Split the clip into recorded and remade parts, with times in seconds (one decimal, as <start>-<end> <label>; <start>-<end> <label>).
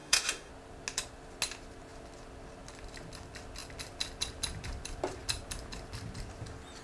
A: 0.0-0.5 remade; 0.5-6.8 recorded